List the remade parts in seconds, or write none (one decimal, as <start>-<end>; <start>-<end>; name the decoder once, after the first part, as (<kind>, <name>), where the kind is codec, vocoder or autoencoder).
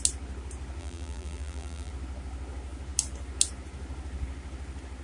0.8-1.9 (vocoder, BigVGAN v2)